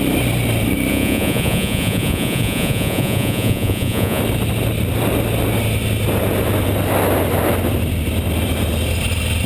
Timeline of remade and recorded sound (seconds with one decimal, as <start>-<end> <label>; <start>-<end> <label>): 0.0-0.9 recorded; 0.9-4.2 remade; 4.2-9.5 recorded

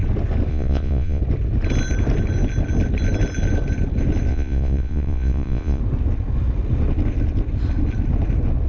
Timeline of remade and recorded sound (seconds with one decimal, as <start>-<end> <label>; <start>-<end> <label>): 0.0-0.5 recorded; 0.5-1.2 remade; 1.2-4.3 recorded; 4.3-5.8 remade; 5.8-8.7 recorded